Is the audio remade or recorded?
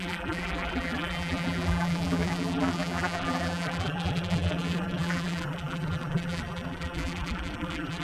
remade